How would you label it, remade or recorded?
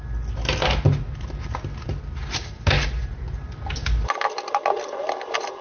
recorded